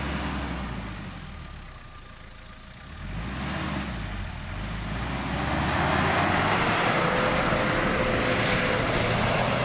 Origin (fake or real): real